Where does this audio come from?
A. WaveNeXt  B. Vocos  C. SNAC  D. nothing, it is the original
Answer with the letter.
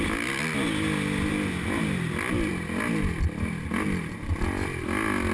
D